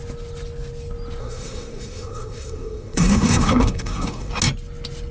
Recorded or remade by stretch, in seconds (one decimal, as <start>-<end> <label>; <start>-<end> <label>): 0.0-1.2 recorded; 1.2-4.3 remade; 4.3-5.1 recorded